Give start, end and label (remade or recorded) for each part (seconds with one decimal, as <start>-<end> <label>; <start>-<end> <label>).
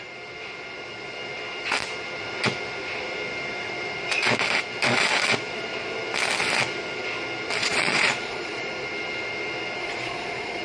0.0-7.6 recorded; 7.6-8.7 remade; 8.7-9.8 recorded; 9.8-10.6 remade